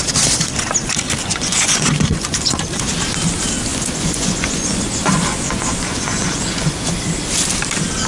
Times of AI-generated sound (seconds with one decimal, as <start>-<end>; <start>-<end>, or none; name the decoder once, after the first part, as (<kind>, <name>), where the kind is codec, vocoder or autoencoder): 1.2-2.6 (vocoder, Vocos); 3.7-6.9